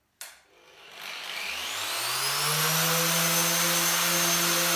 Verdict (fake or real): real